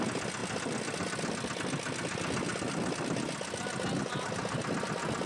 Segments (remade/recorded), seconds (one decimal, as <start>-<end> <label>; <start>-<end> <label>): 0.0-5.3 recorded